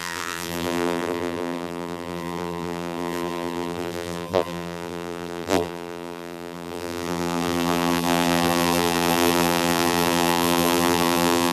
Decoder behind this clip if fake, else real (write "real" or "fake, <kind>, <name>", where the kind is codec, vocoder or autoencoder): fake, vocoder, BigVGAN v2